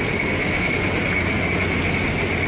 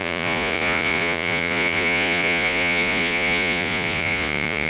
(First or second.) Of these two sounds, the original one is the first